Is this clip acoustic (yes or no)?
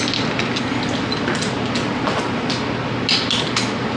yes